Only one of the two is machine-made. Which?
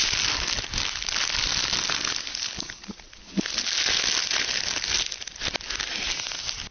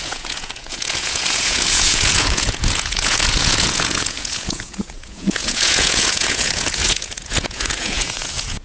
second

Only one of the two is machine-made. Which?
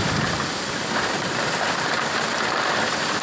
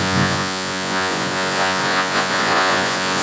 second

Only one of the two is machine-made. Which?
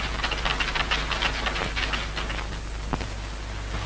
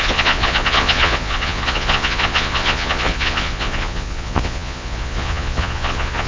second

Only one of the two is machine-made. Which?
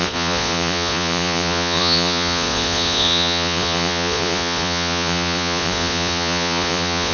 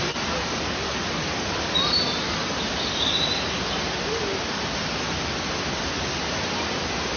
first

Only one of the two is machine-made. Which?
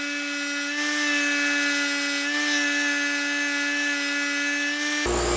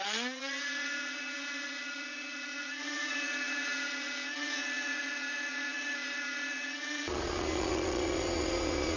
second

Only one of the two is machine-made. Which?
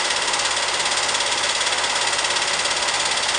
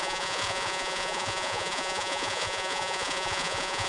second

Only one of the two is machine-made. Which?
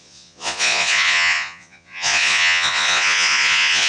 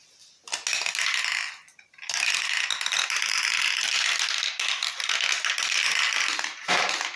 first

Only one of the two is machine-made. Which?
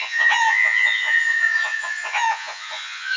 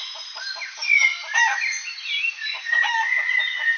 first